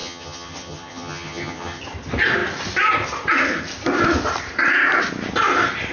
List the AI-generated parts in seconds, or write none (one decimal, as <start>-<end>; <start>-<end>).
0.0-1.8